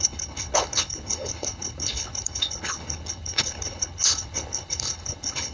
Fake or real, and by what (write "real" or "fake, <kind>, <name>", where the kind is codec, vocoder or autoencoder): fake, codec, HILCodec